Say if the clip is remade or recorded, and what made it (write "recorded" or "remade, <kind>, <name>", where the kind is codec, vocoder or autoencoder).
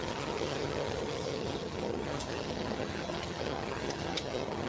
remade, vocoder, HiFi-GAN